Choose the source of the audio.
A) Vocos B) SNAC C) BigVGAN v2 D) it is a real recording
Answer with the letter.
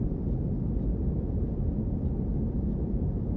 D